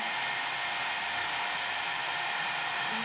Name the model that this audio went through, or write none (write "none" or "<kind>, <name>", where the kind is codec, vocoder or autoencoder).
vocoder, BigVGAN v2